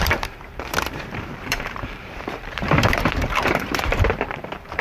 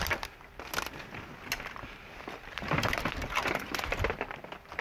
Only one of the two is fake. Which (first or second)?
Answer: first